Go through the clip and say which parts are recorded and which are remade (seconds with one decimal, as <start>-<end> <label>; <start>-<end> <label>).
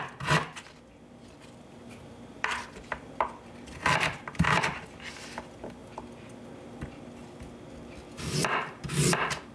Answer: 0.0-5.8 remade; 5.8-8.3 recorded; 8.3-9.5 remade